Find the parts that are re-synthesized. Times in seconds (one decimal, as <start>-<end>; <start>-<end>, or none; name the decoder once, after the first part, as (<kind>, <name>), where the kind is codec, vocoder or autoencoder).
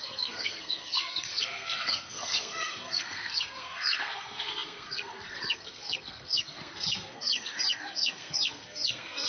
0.0-9.3 (codec, SNAC)